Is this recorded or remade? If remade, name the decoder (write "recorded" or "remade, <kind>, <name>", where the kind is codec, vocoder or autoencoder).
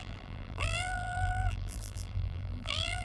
remade, vocoder, BigVGAN v2